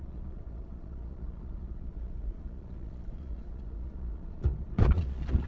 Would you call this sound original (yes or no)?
no